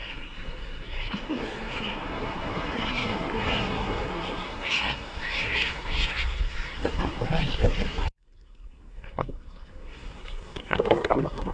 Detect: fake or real fake